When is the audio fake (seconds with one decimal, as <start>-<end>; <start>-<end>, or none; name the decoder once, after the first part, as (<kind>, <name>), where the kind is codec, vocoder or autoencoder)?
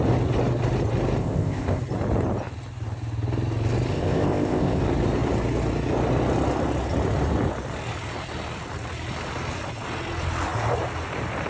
1.2-1.8 (codec, ZipCodec); 3.9-4.8